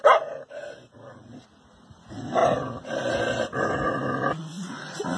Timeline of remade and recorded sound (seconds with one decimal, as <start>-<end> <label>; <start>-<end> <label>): 0.0-5.2 recorded